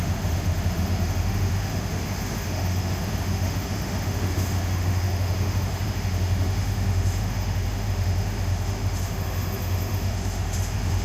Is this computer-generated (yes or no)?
yes